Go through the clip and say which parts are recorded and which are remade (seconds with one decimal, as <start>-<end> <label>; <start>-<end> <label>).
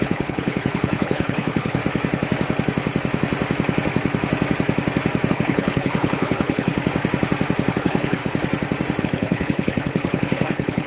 0.0-1.8 remade; 1.8-5.3 recorded; 5.3-6.7 remade; 6.7-7.7 recorded; 7.7-8.2 remade; 8.2-9.0 recorded; 9.0-10.9 remade